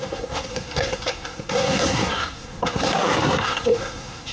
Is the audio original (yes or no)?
no